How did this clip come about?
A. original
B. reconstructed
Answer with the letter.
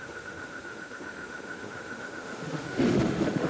B